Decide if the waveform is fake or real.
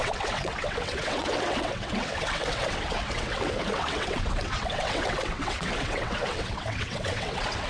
fake